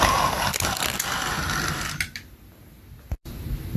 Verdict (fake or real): fake